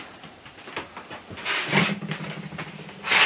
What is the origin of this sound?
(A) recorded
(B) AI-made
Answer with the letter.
A